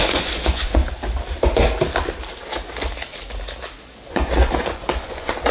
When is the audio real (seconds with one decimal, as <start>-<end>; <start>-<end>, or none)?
0.8-4.1